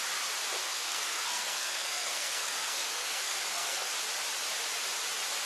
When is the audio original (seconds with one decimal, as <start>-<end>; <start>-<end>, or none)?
0.0-0.6; 3.9-5.5